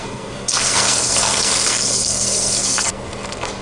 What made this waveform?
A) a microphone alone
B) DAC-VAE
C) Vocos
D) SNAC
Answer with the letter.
D